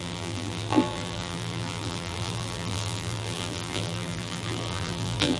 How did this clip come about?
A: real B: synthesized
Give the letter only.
B